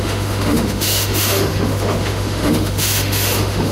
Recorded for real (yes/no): no